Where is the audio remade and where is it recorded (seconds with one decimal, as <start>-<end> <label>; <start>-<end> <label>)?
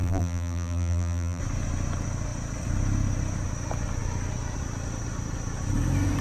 0.0-1.4 remade; 1.4-6.2 recorded